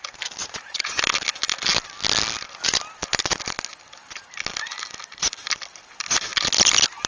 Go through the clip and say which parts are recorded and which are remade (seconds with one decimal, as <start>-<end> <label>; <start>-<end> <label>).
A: 0.0-0.4 recorded; 0.4-1.0 remade; 1.0-7.1 recorded